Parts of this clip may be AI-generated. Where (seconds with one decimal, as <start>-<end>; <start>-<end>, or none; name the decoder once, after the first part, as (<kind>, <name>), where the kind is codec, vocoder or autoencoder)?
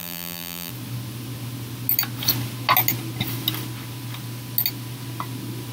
0.0-0.7 (vocoder, BigVGAN v2)